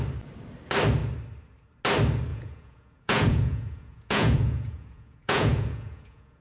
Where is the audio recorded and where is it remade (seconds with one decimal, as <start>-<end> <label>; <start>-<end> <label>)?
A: 0.0-2.3 recorded; 2.3-6.4 remade